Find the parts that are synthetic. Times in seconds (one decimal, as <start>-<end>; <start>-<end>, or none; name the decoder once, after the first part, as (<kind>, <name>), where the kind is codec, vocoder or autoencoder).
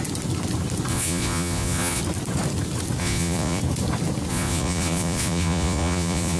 0.9-2.0 (vocoder, Vocos); 3.0-3.6; 4.3-6.4